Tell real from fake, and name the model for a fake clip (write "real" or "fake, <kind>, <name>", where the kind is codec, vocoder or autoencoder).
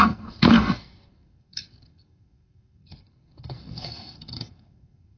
fake, codec, SNAC